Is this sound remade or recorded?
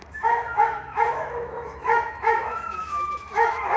remade